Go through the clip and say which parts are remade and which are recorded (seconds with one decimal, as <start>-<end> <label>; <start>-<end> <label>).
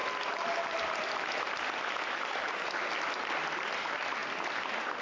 0.0-5.0 recorded